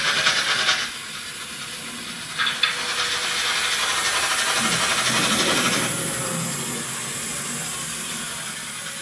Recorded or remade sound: recorded